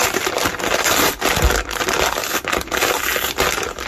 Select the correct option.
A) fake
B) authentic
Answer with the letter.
B